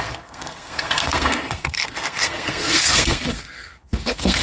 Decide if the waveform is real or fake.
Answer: fake